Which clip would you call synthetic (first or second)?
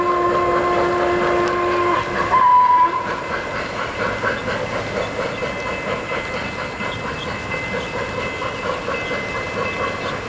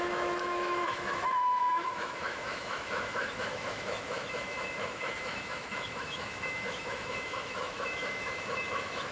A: second